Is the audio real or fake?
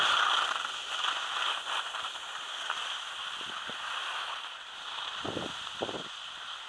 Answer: real